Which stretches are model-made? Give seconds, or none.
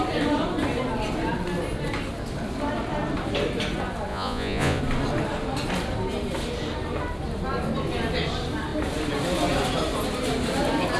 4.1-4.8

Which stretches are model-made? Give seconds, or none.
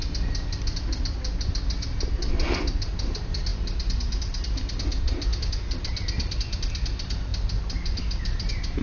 none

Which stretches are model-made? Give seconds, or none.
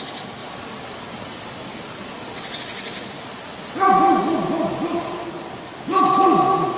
none